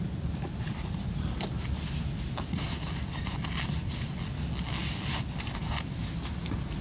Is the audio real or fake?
real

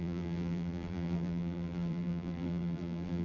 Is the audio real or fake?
fake